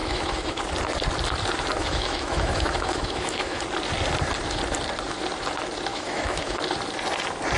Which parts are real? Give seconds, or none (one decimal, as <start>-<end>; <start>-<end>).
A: 0.6-1.8; 3.6-5.9; 6.6-7.6